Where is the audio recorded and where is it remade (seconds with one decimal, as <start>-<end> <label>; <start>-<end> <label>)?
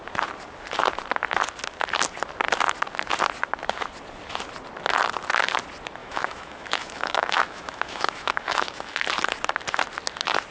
0.0-6.0 recorded; 6.0-9.0 remade; 9.0-10.5 recorded